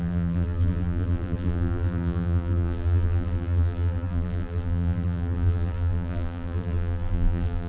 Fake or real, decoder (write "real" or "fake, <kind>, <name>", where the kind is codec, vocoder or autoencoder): fake, vocoder, BigVGAN v2